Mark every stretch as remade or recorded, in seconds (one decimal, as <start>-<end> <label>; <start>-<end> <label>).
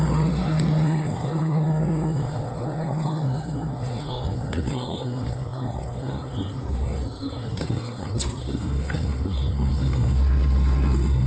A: 0.0-11.3 remade